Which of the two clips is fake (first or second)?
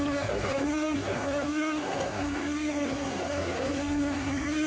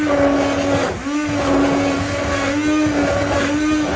first